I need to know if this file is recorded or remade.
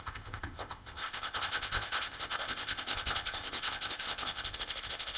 remade